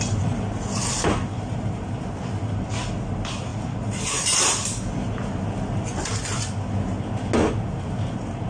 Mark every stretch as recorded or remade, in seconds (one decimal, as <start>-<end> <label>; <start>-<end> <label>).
0.0-8.5 recorded